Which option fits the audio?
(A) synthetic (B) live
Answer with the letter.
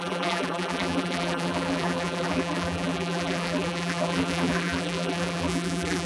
A